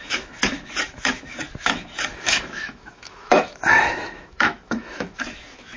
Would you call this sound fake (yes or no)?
yes